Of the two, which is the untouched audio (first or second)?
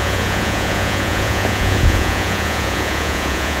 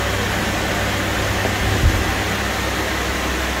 second